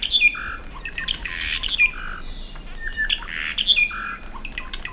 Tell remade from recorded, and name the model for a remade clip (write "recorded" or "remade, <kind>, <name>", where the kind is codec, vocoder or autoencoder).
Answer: recorded